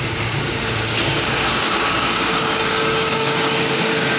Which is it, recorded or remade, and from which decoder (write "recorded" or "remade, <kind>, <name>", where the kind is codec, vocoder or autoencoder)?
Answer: remade, codec, DAC